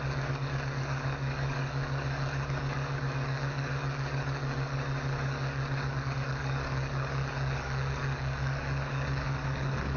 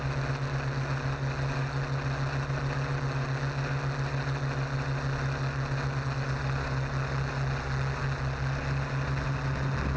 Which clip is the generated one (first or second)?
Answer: first